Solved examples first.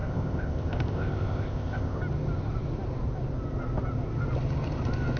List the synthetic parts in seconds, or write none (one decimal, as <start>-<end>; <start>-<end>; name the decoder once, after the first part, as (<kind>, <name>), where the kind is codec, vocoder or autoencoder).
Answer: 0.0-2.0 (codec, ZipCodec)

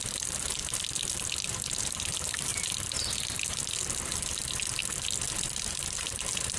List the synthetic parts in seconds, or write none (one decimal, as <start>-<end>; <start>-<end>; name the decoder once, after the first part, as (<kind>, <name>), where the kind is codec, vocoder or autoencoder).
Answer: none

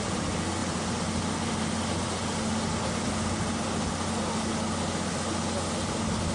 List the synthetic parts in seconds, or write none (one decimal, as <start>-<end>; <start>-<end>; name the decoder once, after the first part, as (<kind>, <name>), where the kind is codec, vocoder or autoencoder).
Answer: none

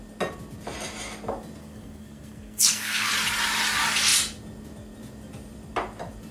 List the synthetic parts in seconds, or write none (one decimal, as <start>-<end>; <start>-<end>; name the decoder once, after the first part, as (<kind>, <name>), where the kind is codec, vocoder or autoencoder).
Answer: 1.6-3.1 (codec, SNAC)